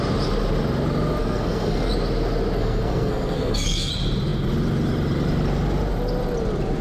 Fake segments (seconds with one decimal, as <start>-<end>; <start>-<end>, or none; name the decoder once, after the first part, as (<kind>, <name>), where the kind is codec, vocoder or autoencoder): 1.2-1.9 (codec, SNAC); 2.6-3.9